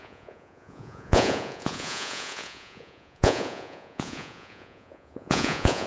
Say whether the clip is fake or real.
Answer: fake